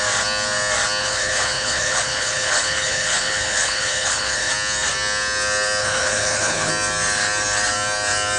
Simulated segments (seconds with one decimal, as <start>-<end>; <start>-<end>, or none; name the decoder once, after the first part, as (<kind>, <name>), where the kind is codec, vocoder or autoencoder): 1.0-4.5 (codec, HILCodec); 5.8-6.7